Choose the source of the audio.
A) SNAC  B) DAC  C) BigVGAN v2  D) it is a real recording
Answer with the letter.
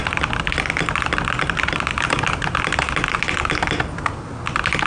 D